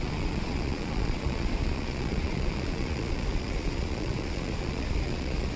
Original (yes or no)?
no